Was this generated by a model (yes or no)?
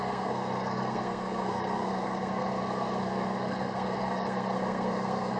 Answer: yes